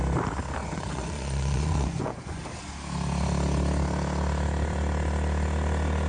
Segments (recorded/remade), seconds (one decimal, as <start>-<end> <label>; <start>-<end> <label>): 0.0-0.6 recorded; 0.6-2.4 remade; 2.4-6.1 recorded